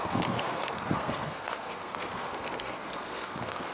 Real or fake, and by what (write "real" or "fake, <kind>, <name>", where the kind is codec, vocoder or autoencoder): fake, codec, SNAC